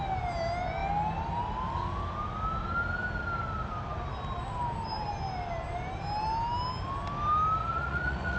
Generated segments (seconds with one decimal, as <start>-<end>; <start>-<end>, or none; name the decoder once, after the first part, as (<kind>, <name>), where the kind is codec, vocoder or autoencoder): 7.6-8.4 (vocoder, Vocos)